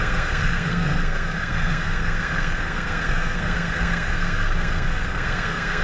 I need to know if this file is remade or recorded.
remade